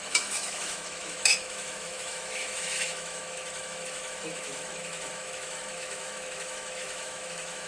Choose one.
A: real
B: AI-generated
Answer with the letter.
B